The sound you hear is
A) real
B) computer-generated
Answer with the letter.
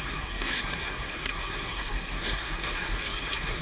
B